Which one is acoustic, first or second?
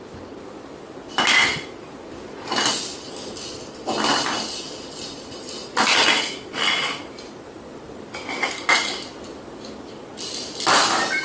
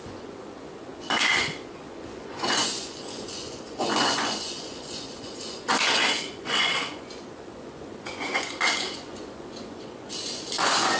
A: first